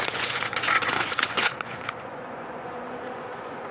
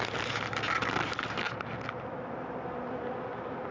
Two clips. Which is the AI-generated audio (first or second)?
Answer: first